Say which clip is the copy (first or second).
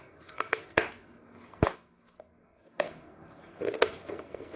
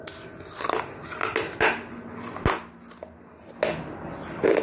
first